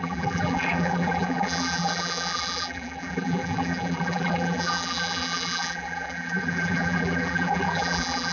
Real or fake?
fake